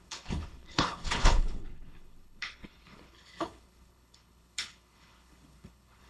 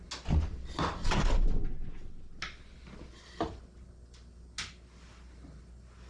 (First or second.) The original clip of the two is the second